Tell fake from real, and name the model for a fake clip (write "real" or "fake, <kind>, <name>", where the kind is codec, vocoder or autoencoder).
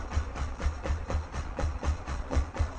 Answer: fake, vocoder, Vocos